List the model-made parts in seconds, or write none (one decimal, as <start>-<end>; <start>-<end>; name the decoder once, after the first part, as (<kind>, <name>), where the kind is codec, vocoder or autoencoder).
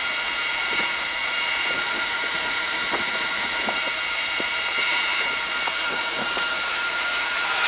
0.0-7.7 (vocoder, Vocos)